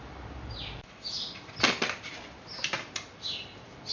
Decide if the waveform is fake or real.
real